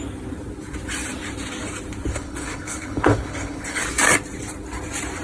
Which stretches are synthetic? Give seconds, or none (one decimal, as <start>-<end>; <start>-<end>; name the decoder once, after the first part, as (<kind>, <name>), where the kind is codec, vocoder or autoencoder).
2.1-3.8 (codec, HILCodec)